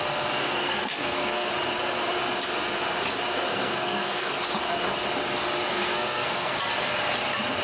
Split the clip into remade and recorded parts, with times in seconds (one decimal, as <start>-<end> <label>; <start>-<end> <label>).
0.0-0.4 recorded; 0.4-1.5 remade; 1.5-3.5 recorded; 3.5-4.4 remade; 4.4-5.7 recorded; 5.7-6.6 remade; 6.6-7.6 recorded